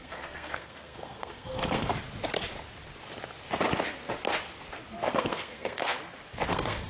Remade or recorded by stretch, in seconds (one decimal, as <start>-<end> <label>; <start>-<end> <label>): 0.0-1.9 remade; 1.9-5.1 recorded; 5.1-5.8 remade; 5.8-6.5 recorded; 6.5-6.9 remade